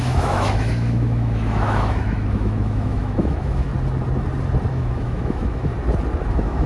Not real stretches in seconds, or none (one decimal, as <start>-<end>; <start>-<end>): 0.0-3.7; 4.7-5.7; 6.3-6.7